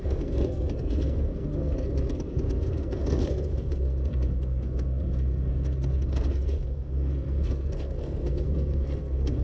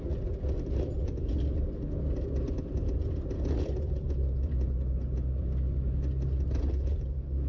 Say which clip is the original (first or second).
second